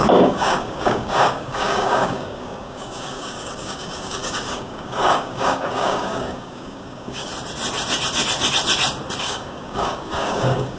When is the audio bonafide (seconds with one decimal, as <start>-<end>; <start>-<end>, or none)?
7.3-9.2